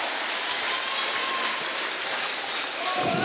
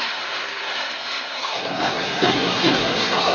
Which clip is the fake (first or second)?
second